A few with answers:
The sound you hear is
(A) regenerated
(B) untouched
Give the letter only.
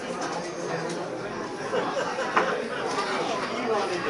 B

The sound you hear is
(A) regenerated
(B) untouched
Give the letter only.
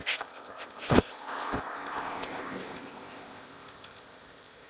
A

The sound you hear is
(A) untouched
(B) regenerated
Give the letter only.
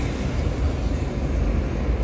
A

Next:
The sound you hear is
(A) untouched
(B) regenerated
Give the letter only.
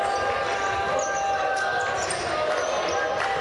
A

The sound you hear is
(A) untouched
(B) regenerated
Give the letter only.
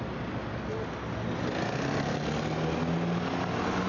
A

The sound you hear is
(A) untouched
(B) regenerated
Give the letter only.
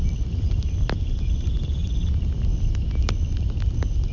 A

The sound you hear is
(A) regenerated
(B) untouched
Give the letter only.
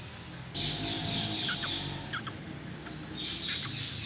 B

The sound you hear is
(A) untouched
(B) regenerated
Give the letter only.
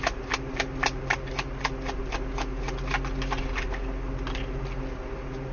A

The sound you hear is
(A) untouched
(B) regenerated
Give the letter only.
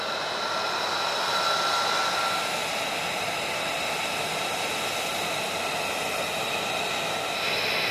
A